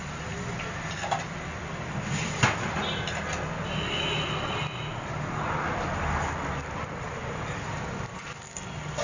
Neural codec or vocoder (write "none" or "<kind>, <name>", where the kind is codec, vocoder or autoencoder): none